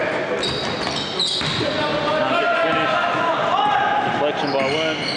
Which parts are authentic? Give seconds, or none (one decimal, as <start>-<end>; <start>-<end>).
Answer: 0.0-5.2